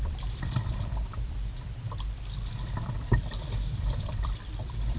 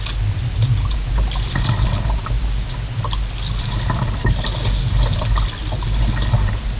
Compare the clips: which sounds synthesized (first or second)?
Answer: first